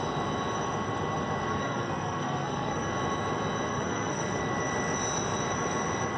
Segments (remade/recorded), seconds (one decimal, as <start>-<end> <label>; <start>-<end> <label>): 0.0-1.5 recorded; 1.5-2.9 remade; 2.9-3.7 recorded; 3.7-4.4 remade; 4.4-6.2 recorded